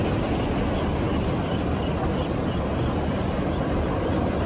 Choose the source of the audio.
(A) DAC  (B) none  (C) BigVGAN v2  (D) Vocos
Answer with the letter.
B